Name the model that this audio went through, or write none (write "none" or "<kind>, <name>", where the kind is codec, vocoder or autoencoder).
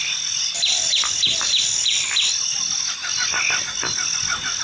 none